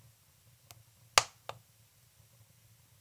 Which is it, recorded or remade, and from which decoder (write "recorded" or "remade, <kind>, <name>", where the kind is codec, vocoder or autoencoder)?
recorded